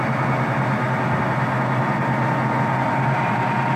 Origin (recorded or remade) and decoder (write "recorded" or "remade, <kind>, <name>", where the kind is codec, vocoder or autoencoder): recorded